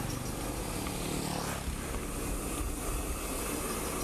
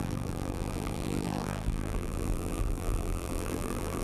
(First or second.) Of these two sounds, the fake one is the second